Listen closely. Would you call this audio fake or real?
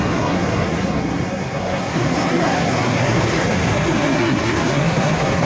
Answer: fake